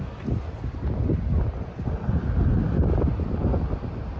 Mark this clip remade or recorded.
recorded